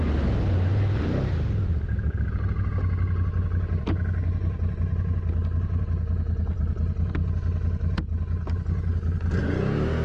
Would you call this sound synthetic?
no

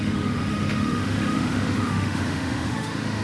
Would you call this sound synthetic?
yes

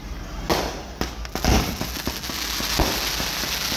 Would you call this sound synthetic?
no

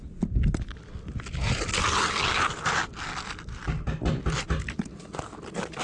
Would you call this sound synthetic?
no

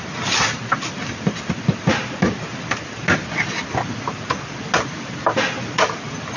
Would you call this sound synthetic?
no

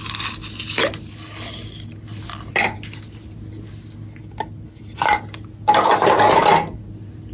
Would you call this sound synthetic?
no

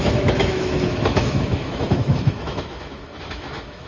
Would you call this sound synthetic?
yes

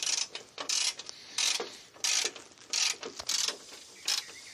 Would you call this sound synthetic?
no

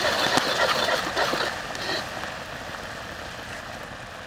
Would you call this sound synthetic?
no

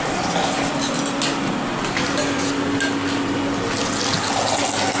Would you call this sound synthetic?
no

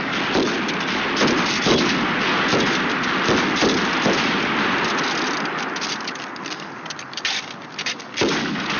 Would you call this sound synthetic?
no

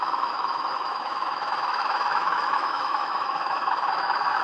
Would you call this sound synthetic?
yes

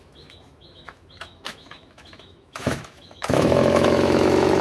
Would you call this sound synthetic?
yes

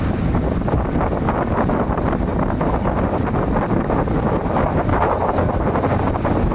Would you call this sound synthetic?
no